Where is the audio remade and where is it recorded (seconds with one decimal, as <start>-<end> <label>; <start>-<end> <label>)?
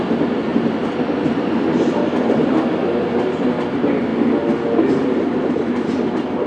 0.0-6.5 recorded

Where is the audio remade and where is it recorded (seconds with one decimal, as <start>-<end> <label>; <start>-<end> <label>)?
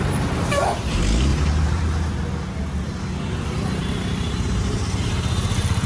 0.0-1.3 recorded; 1.3-2.1 remade; 2.1-3.8 recorded; 3.8-5.1 remade; 5.1-5.9 recorded